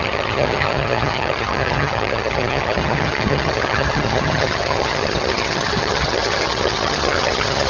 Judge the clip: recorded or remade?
remade